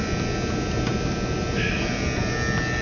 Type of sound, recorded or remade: recorded